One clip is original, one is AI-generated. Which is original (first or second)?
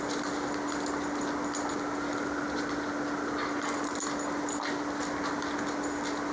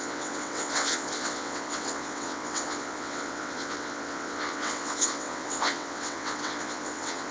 first